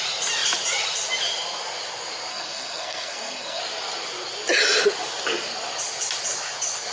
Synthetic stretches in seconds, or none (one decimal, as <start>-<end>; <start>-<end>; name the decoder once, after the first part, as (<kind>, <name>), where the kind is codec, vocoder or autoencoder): 2.3-3.6 (codec, SNAC)